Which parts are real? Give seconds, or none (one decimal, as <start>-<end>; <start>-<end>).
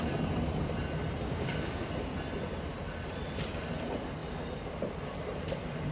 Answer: 0.0-1.2; 1.9-5.9